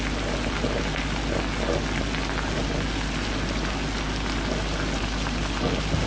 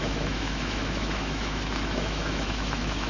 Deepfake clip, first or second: second